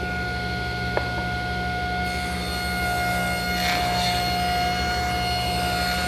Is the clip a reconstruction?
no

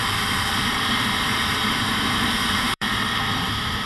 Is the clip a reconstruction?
yes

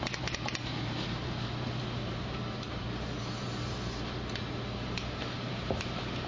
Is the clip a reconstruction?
yes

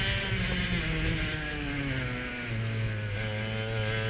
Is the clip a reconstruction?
no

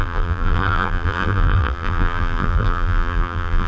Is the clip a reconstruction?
yes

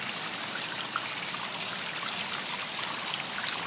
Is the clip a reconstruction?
no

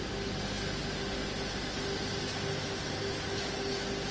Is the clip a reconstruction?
no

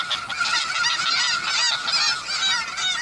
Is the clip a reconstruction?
no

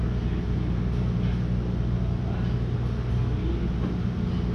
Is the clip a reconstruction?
no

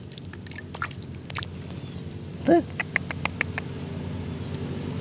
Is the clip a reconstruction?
no